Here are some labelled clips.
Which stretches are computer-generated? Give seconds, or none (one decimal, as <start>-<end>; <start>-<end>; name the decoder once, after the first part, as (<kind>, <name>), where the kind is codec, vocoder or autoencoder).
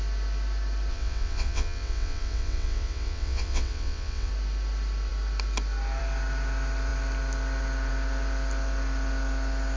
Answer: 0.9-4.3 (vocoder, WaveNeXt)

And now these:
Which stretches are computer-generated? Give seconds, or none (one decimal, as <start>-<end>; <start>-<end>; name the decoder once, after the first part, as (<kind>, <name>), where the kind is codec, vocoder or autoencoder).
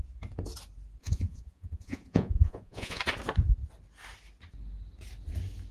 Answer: 1.0-3.0 (vocoder, Vocos)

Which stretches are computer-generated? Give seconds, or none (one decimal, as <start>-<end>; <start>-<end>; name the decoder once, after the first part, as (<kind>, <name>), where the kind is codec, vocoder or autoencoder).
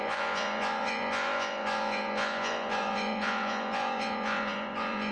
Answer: 0.0-5.1 (vocoder, Vocos)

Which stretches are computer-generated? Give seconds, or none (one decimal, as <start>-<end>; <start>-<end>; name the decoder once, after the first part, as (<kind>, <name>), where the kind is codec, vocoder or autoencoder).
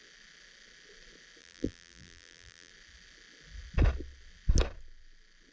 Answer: 1.4-2.7 (vocoder, BigVGAN v2)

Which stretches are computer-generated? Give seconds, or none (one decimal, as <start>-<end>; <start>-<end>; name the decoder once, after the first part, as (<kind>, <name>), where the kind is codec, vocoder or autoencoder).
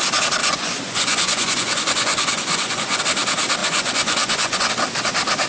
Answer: 0.4-3.0 (vocoder, Vocos); 3.6-4.7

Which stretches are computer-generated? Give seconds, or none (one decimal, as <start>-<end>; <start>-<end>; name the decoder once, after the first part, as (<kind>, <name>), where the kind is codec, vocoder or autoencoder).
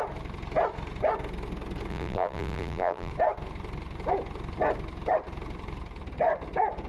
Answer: 1.9-3.1 (vocoder, BigVGAN v2)